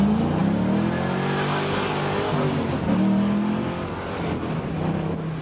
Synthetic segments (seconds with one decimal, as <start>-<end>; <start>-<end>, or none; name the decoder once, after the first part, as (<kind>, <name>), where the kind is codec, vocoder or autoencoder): none